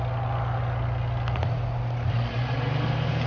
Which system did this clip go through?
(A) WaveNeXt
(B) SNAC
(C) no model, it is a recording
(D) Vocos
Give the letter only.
C